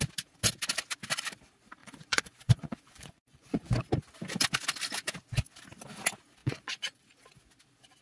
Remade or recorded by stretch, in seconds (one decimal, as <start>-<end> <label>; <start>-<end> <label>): 0.0-1.8 recorded; 1.8-3.8 remade; 3.8-6.4 recorded; 6.4-7.0 remade; 7.0-8.0 recorded